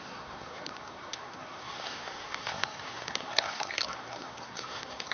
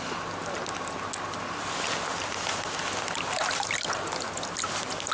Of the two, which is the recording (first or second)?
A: second